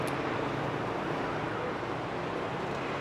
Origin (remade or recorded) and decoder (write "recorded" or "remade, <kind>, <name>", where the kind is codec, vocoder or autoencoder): recorded